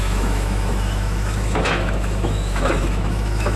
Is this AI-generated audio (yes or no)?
yes